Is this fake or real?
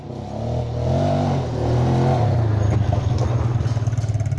real